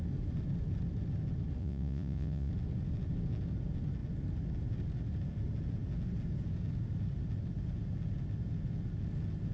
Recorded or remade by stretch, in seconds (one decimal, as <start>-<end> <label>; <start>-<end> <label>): 0.0-1.6 recorded; 1.6-2.5 remade; 2.5-9.5 recorded

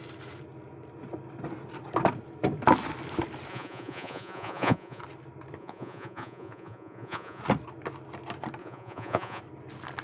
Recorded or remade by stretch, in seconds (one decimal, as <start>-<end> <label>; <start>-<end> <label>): 0.0-3.5 recorded; 3.5-5.0 remade; 5.0-5.6 recorded; 5.6-7.4 remade; 7.4-8.6 recorded; 8.6-9.4 remade; 9.4-10.0 recorded

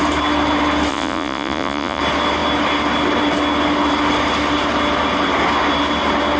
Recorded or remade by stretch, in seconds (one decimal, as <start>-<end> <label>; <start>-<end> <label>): 0.0-0.9 recorded; 0.9-2.0 remade; 2.0-6.4 recorded

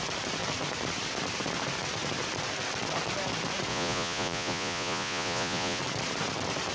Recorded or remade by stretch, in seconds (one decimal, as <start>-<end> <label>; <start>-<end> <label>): 0.0-3.7 recorded; 3.7-5.8 remade; 5.8-6.7 recorded

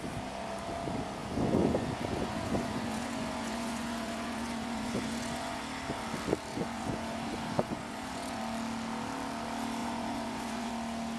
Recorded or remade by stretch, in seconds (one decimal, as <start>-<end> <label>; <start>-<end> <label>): 0.0-1.2 recorded; 1.2-5.6 remade; 5.6-6.5 recorded; 6.5-8.4 remade; 8.4-9.8 recorded; 9.8-10.7 remade; 10.7-11.2 recorded